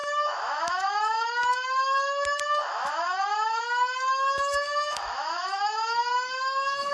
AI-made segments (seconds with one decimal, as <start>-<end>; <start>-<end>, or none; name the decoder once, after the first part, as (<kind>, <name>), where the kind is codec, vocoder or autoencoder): 0.0-6.9 (autoencoder, DAC-VAE)